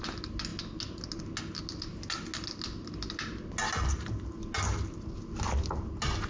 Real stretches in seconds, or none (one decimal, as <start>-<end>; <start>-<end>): 0.0-6.3